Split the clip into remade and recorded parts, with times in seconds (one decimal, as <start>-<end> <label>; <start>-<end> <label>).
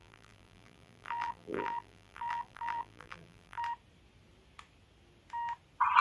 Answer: 0.0-3.6 remade; 3.6-6.0 recorded